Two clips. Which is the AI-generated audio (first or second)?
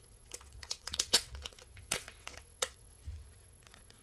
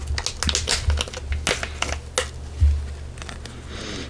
first